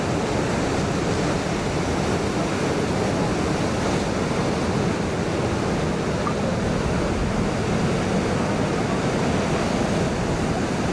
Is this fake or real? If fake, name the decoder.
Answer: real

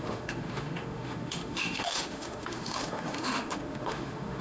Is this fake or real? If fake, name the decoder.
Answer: fake, autoencoder, DAC-VAE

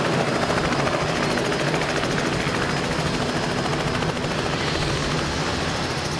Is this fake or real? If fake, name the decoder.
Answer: real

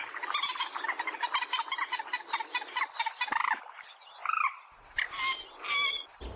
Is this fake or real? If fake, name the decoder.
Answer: real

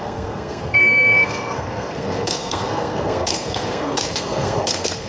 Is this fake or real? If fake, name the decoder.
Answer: fake, codec, SNAC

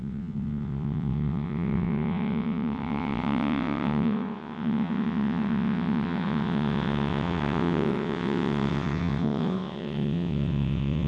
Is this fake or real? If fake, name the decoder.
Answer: fake, vocoder, WaveNeXt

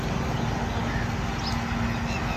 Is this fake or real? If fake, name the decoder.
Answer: real